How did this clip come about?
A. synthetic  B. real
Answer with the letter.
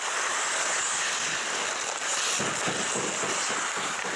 B